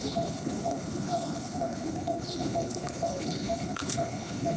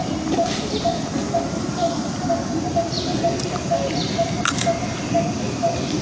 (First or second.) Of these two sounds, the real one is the second